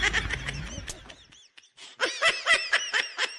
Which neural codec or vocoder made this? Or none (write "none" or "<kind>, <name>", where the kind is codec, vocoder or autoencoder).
none